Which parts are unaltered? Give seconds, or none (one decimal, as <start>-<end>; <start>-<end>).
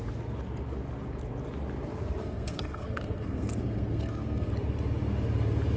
0.0-2.2; 4.5-5.8